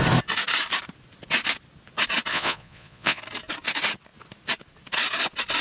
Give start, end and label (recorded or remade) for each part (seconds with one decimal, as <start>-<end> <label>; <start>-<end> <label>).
0.0-2.3 recorded; 2.3-3.2 remade; 3.2-5.6 recorded